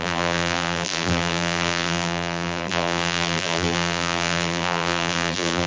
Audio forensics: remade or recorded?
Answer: remade